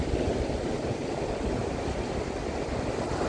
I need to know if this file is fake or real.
real